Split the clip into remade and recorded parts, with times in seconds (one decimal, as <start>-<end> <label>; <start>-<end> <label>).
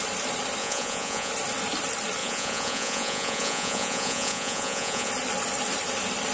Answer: 0.0-0.6 recorded; 0.6-1.3 remade; 1.3-2.2 recorded; 2.2-5.1 remade; 5.1-6.3 recorded